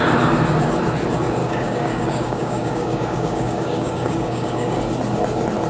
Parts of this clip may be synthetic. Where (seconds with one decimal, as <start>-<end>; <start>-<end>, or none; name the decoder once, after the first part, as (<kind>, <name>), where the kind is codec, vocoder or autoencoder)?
1.4-4.8 (codec, DAC)